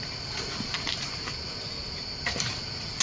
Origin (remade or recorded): recorded